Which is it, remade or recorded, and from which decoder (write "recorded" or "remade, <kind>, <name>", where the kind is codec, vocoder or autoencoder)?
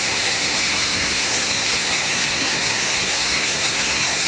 remade, codec, SNAC